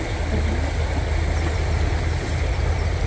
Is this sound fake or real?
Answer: real